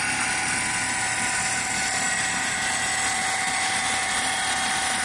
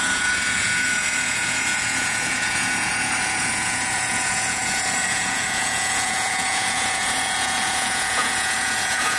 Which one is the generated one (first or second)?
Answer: second